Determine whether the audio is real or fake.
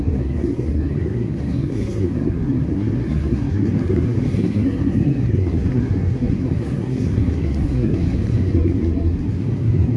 fake